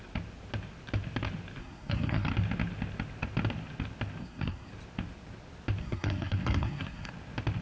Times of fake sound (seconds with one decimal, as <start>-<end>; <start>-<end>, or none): 1.6-2.3; 4.2-4.7; 5.8-7.1